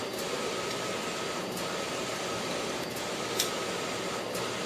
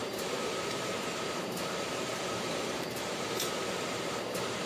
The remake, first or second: second